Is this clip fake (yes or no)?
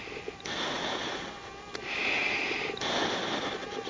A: no